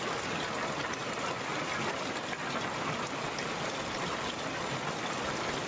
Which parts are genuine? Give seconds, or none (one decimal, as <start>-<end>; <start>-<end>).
0.0-5.7